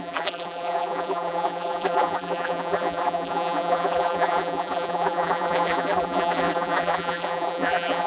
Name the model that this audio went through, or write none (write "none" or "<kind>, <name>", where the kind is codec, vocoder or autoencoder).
vocoder, BigVGAN v2